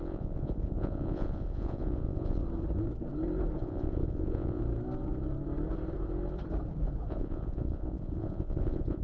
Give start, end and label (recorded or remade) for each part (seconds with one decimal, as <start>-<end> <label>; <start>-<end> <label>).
0.0-2.4 remade; 2.4-3.6 recorded; 3.6-4.6 remade; 4.6-7.1 recorded; 7.1-9.0 remade